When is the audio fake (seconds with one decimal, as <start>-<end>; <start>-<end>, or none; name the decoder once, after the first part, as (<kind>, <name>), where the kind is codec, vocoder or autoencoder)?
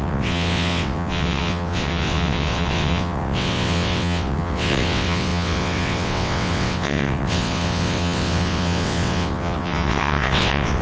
0.0-10.8 (vocoder, WaveNeXt)